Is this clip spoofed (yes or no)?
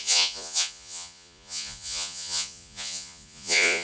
yes